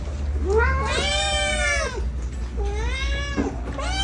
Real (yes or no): yes